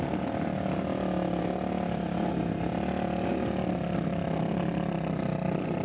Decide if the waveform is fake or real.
real